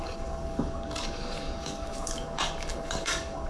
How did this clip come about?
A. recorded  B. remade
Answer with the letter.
B